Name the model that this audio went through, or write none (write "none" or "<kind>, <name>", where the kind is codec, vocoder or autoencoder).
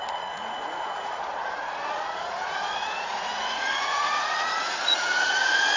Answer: vocoder, Vocos